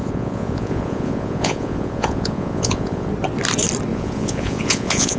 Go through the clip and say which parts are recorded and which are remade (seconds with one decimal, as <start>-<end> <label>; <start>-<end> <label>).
0.0-3.1 remade; 3.1-3.9 recorded; 3.9-5.2 remade